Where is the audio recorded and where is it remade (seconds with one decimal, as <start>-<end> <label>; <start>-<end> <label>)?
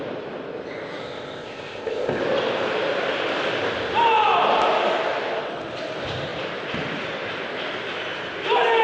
0.0-1.0 recorded; 1.0-2.2 remade; 2.2-8.8 recorded